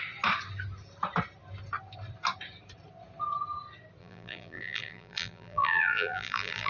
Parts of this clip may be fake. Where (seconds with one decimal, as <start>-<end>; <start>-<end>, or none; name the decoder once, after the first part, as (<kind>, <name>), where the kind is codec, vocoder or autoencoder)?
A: 4.0-6.7 (vocoder, BigVGAN v2)